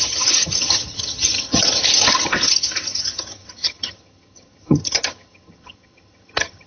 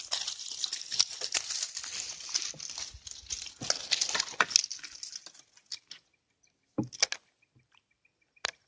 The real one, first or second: second